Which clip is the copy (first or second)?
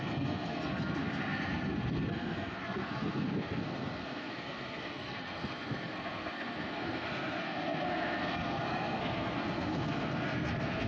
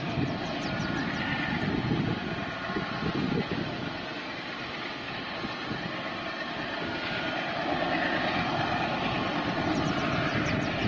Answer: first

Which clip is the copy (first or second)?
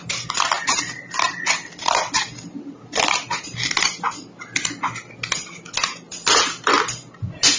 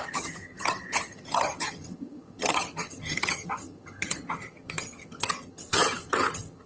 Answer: second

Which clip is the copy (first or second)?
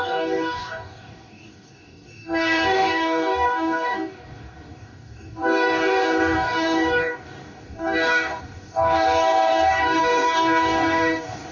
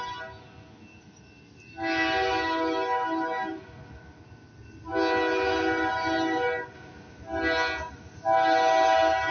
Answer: first